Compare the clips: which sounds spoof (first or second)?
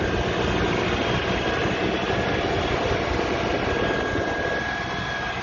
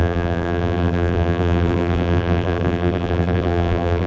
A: second